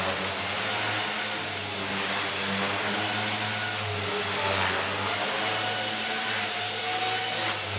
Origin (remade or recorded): recorded